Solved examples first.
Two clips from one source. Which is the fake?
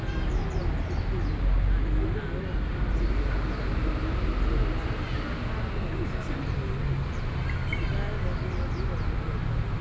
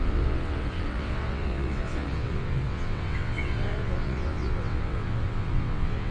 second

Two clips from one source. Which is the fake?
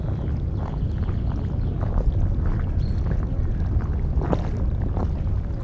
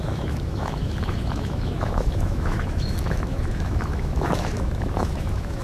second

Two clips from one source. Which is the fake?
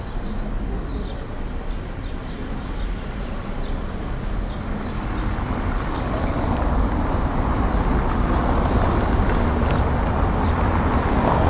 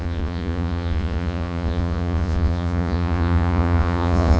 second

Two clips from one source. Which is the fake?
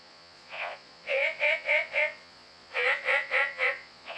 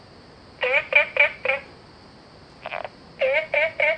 first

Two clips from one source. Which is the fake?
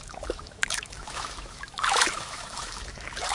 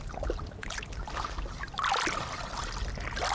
first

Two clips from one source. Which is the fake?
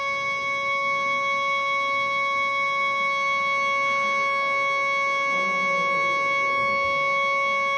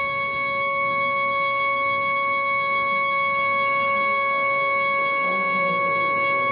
second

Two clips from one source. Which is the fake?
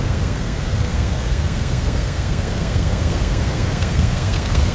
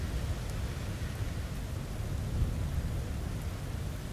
first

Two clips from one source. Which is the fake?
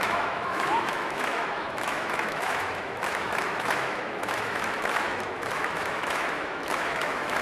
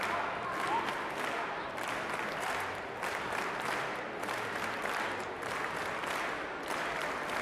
first